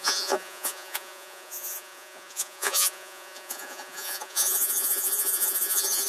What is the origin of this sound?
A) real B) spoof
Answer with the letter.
B